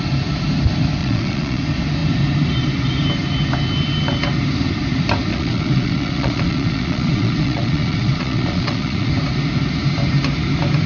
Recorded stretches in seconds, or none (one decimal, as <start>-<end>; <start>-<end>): 0.0-1.0; 1.6-5.3; 9.1-10.9